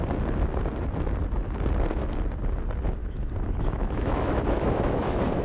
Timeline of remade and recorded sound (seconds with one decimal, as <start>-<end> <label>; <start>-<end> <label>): 0.0-3.0 recorded; 3.0-5.4 remade